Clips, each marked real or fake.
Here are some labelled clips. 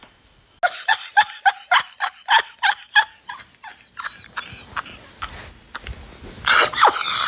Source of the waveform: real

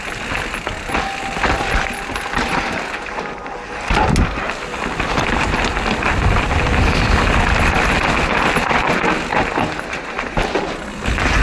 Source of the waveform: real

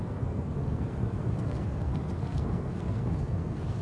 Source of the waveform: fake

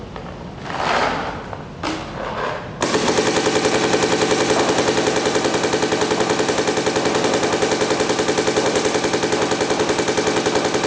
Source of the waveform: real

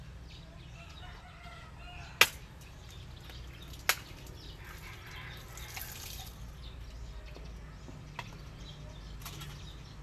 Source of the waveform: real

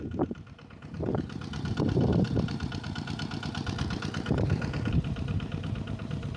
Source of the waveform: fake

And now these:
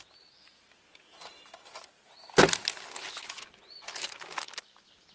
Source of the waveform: real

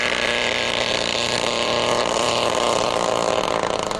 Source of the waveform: fake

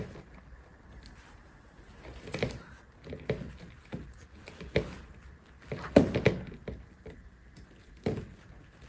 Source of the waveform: real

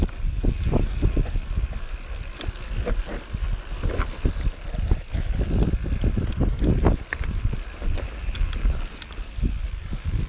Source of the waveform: real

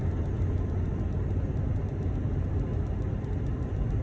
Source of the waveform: real